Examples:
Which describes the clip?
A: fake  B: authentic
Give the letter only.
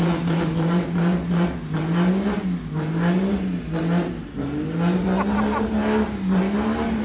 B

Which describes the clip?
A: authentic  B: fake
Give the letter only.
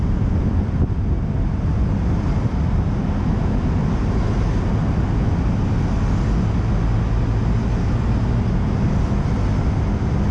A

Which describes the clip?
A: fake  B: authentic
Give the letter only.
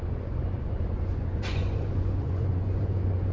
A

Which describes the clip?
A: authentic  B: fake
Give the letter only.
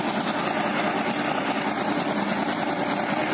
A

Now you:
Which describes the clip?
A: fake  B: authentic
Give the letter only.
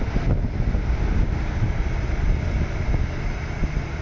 B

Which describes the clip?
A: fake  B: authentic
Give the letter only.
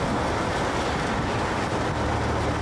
B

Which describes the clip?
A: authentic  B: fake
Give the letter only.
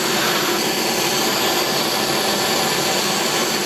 A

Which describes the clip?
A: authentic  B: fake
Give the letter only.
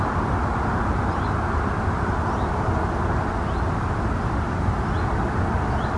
A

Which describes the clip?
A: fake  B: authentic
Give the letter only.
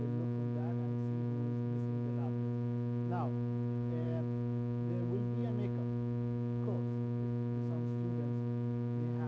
B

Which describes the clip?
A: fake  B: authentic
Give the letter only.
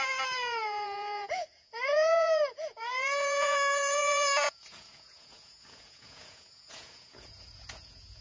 A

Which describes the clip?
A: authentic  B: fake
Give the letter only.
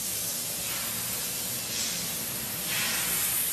A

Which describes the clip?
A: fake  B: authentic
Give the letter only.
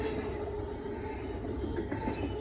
B